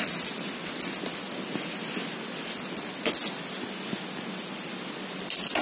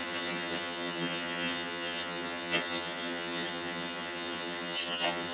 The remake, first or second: second